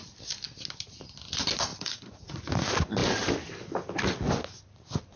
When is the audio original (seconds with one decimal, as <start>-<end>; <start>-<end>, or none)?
0.0-1.7; 2.4-5.2